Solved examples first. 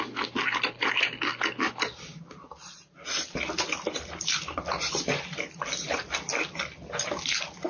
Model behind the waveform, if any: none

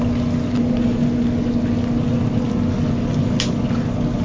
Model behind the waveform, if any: none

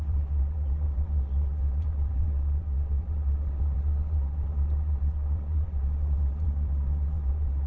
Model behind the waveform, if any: vocoder, WaveNeXt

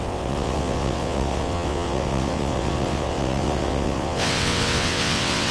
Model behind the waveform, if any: vocoder, WaveNeXt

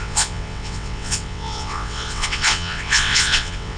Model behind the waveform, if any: vocoder, WaveNeXt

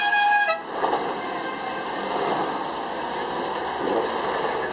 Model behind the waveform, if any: none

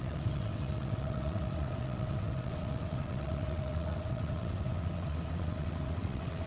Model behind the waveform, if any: vocoder, WaveNeXt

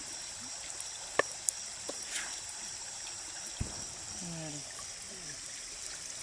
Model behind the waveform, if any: none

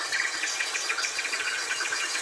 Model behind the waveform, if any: vocoder, WaveNeXt